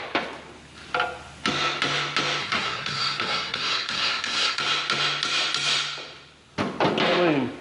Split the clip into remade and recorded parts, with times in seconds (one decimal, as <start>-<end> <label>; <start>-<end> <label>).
0.0-2.4 recorded; 2.4-4.6 remade; 4.6-7.6 recorded